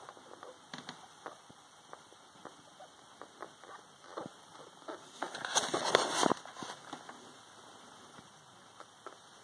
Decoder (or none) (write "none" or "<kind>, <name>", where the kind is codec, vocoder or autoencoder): none